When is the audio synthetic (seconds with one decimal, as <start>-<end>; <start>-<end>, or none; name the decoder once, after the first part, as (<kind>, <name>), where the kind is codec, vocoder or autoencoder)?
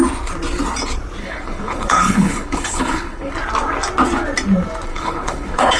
1.2-3.3 (codec, HILCodec); 4.9-5.8